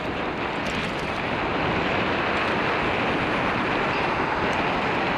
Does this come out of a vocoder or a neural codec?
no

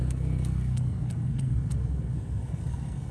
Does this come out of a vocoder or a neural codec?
yes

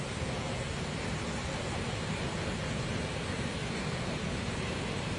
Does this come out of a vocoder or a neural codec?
no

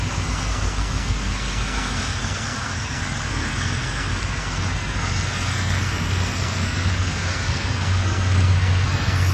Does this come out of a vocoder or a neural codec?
yes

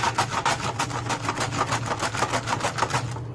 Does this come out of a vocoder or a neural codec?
no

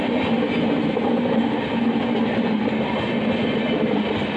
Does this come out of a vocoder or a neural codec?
no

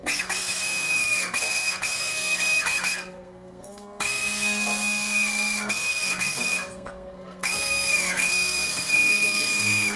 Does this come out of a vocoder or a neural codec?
yes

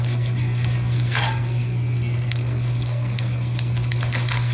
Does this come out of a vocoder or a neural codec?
yes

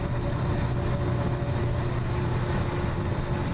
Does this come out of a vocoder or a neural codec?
no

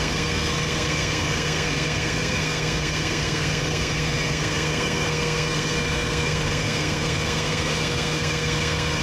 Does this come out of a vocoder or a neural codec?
yes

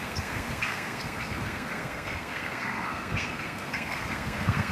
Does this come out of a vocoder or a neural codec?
yes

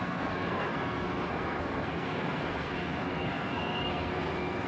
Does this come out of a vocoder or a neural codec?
yes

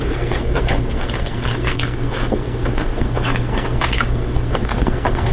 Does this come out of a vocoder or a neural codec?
yes